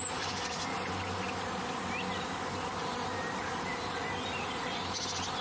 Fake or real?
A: real